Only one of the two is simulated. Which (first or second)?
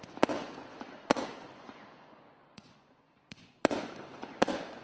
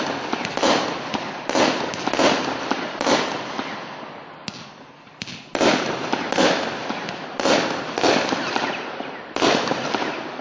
first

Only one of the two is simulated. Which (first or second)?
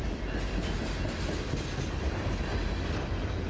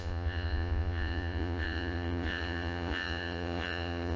second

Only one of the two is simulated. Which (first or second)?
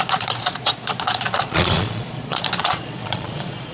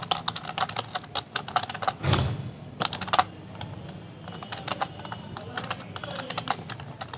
first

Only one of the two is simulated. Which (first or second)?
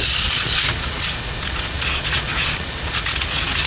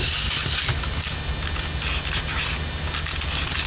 first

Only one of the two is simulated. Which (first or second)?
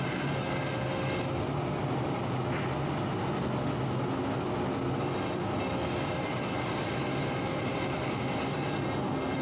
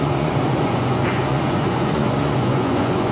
second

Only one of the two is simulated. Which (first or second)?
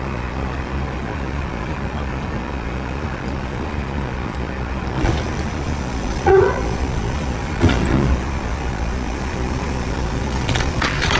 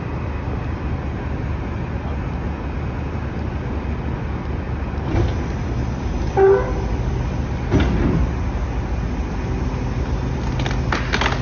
first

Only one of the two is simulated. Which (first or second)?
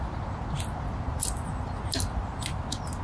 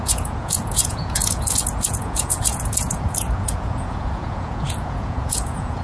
second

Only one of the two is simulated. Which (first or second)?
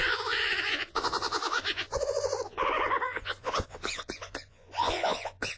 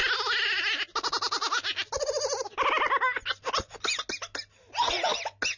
first